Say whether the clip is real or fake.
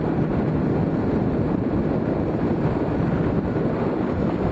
real